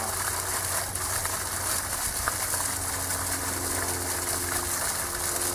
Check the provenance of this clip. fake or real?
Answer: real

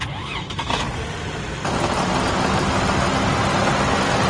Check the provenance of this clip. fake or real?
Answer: real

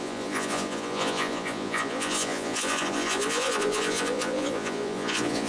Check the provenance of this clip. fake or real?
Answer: fake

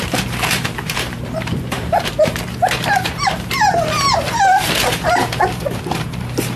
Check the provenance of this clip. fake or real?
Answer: fake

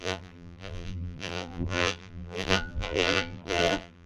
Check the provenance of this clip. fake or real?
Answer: fake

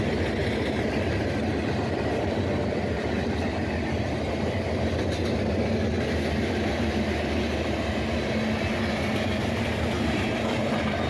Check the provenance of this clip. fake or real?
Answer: real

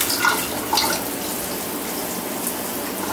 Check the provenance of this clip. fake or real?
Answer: real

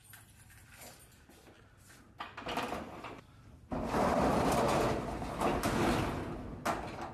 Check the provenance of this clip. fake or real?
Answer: real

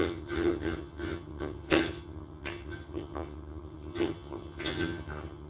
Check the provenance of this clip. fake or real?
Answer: fake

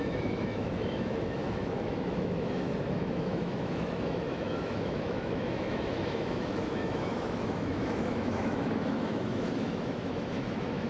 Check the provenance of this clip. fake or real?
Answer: fake